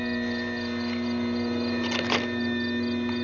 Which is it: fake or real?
real